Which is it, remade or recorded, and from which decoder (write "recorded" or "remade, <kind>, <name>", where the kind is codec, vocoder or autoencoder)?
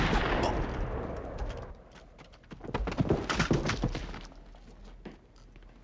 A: recorded